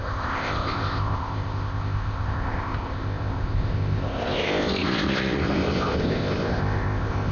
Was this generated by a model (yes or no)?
yes